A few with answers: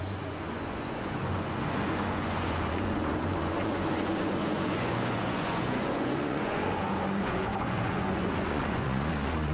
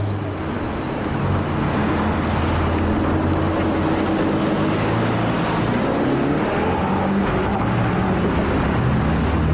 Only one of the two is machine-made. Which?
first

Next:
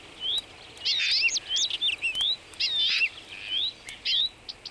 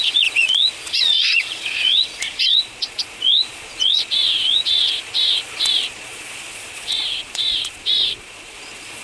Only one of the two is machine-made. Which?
second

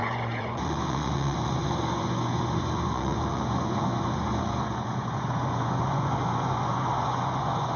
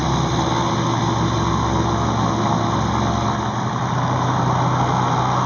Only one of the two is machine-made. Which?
first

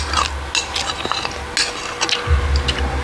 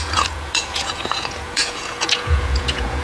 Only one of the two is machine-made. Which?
second